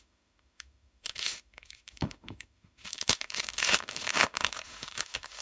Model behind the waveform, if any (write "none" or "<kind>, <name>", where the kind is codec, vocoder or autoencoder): autoencoder, DAC-VAE